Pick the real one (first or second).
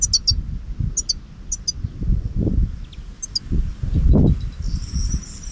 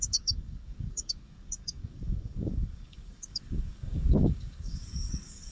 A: first